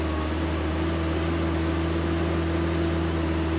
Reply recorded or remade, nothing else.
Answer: recorded